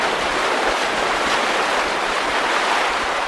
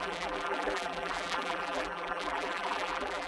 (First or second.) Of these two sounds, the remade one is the second